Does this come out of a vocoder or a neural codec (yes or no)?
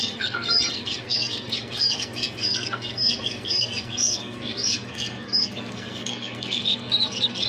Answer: yes